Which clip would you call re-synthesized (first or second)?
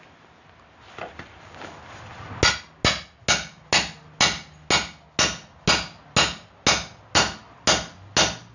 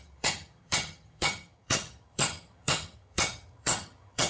second